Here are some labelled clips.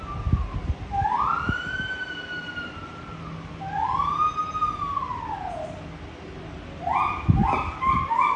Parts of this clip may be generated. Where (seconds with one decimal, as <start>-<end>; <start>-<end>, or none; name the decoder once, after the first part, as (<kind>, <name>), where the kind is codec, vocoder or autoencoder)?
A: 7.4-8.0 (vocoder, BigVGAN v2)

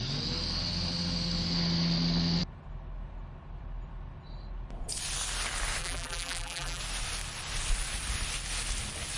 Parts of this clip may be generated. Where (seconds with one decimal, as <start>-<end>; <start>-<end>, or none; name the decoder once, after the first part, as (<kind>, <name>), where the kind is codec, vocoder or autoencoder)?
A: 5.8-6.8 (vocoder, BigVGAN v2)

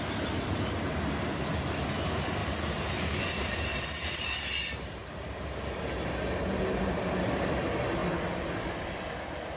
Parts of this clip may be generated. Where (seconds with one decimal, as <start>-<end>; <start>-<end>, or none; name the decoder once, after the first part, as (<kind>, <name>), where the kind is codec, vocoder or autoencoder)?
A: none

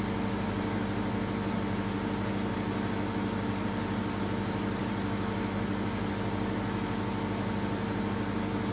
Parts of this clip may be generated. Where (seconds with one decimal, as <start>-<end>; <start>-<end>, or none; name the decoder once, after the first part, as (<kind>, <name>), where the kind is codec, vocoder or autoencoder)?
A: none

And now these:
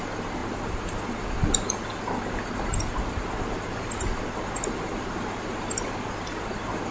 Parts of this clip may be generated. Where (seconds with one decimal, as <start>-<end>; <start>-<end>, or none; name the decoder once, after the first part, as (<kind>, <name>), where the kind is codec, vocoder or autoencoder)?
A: none

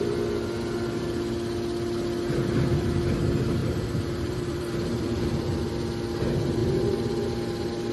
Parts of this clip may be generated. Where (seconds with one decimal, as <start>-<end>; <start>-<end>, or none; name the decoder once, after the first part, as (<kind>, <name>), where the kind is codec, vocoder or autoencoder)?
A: 3.6-5.6 (vocoder, BigVGAN v2)

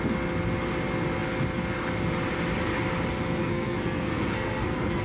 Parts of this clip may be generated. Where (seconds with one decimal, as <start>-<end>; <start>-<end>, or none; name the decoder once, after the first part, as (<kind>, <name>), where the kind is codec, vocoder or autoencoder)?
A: 3.4-5.0 (codec, SNAC)

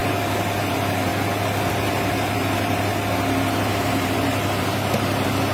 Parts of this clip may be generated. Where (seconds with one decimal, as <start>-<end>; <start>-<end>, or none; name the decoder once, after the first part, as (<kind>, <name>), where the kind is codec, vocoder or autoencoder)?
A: 0.7-1.1 (vocoder, BigVGAN v2); 1.7-2.9; 3.6-5.5